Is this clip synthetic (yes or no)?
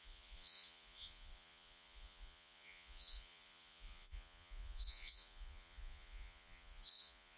yes